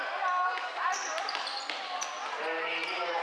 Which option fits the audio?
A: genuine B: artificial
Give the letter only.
A